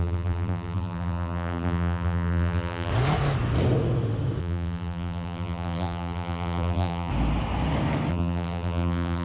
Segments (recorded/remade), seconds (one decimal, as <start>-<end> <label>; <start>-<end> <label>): 0.0-2.9 remade; 2.9-4.4 recorded; 4.4-7.1 remade; 7.1-8.1 recorded; 8.1-9.2 remade